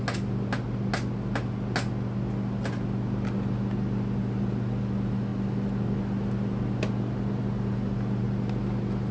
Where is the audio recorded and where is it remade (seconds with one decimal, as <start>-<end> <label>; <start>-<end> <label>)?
0.0-9.1 recorded